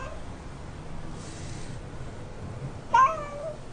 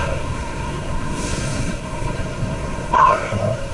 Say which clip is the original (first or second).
first